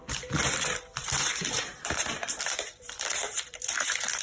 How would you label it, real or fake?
fake